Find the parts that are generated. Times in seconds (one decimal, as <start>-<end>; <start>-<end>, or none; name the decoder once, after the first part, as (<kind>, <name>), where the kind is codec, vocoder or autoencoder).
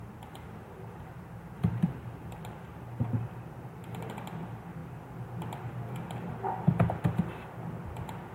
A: 0.6-4.1 (vocoder, BigVGAN v2)